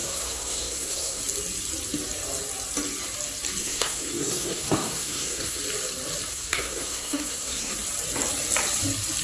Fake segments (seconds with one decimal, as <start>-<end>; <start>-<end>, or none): 0.0-1.2; 3.6-5.6; 6.3-7.7

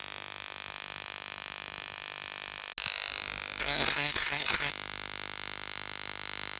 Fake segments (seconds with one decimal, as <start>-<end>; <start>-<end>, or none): 3.6-4.7

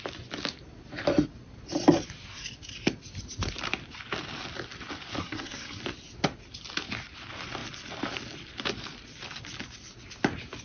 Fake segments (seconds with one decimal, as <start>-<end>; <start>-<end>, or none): 5.2-5.8

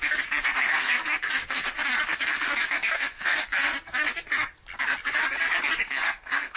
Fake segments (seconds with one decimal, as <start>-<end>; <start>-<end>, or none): 0.0-4.1; 5.8-6.6